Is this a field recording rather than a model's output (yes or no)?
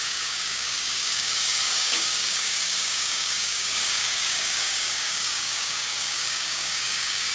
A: no